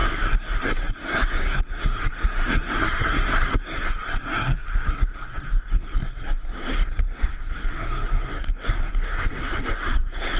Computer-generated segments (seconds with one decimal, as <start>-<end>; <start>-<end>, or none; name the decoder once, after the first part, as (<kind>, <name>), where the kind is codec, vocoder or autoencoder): 0.0-10.4 (codec, SNAC)